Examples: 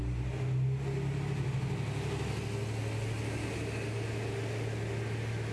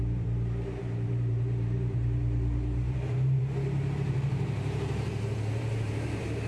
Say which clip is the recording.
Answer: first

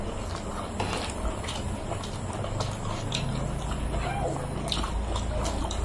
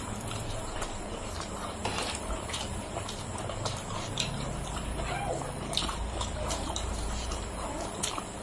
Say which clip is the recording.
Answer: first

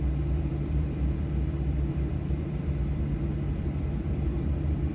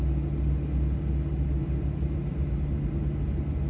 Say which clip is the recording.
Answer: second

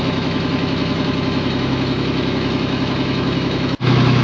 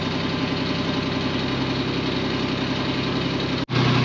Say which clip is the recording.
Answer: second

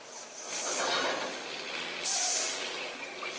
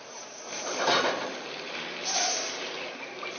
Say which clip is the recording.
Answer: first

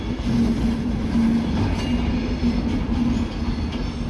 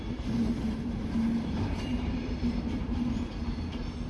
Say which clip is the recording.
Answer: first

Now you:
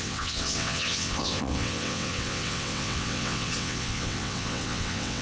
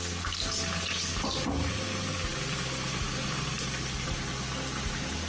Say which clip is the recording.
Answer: second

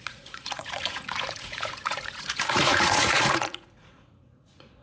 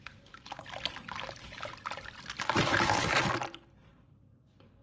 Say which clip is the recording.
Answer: second